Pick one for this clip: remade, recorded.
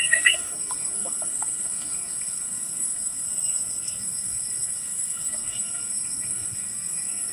remade